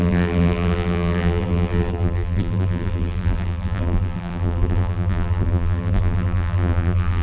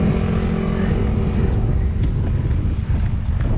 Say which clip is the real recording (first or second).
second